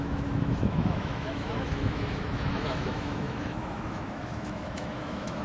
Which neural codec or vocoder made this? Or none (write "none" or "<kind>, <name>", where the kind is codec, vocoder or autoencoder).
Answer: autoencoder, DAC-VAE